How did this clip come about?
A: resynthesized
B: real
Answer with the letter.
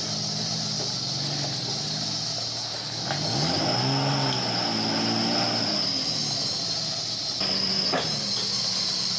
B